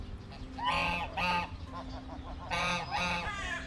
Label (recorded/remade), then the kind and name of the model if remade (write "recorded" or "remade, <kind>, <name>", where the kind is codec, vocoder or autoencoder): recorded